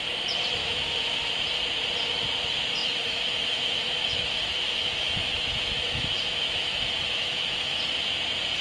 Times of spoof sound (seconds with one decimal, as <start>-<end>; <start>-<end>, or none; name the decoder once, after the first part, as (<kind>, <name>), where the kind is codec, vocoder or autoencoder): 0.6-1.3 (autoencoder, DAC-VAE); 2.8-7.8